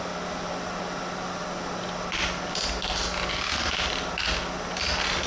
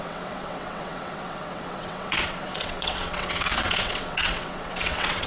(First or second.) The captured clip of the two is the first